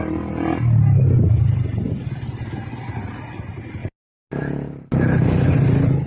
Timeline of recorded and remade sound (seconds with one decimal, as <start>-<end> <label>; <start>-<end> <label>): 0.0-6.1 recorded